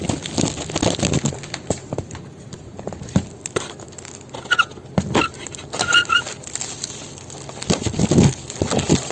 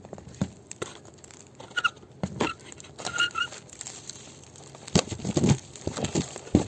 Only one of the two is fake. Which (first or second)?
second